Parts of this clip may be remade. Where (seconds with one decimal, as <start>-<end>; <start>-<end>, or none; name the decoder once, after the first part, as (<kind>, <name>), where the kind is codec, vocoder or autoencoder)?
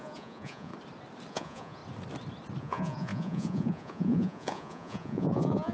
0.0-0.7 (vocoder, Vocos); 1.3-1.8; 2.6-5.7